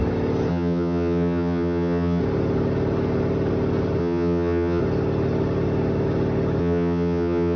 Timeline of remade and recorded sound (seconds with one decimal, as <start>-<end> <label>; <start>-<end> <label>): 0.0-0.5 recorded; 0.5-2.2 remade; 2.2-4.0 recorded; 4.0-4.8 remade; 4.8-6.6 recorded; 6.6-7.6 remade